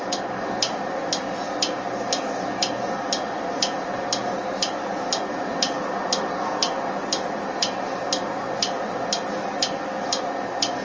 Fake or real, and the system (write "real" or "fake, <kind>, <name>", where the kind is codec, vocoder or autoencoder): real